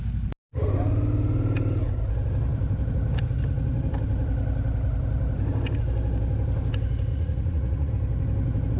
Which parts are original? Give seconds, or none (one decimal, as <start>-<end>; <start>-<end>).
0.0-7.1; 7.9-8.8